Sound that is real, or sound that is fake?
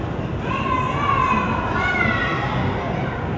real